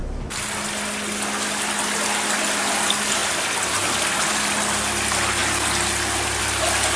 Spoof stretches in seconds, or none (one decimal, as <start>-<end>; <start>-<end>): none